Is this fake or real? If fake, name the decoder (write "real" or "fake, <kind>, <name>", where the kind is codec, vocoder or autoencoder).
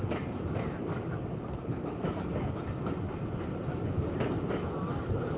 real